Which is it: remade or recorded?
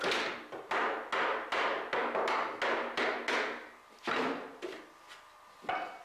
recorded